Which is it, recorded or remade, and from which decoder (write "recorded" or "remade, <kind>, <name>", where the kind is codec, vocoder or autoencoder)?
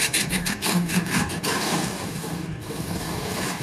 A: remade, codec, DAC